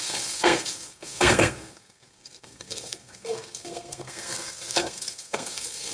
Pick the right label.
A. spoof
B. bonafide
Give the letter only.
A